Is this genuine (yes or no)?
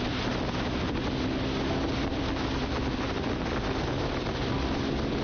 yes